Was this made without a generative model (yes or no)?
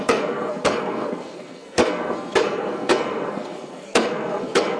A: no